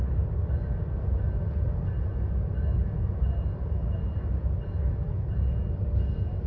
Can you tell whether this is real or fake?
real